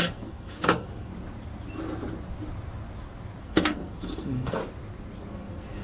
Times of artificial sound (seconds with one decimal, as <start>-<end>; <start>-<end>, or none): 0.0-1.1; 3.4-4.6; 5.3-5.8